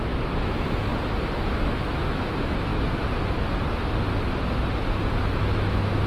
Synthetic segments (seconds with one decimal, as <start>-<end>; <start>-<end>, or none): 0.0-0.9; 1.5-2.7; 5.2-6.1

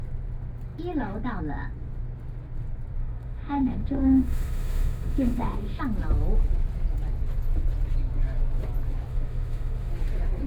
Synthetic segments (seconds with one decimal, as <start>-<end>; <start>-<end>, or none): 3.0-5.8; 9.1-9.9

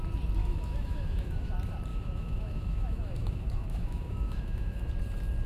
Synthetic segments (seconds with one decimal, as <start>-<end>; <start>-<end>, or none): 0.4-1.5; 1.9-4.9